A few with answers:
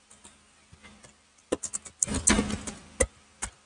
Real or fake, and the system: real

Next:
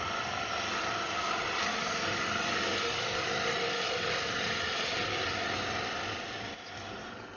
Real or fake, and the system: real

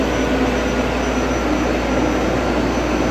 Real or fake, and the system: real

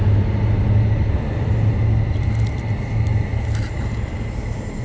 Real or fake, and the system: real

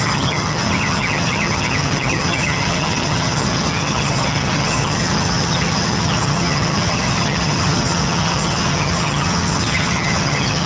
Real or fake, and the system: fake, vocoder, HiFi-GAN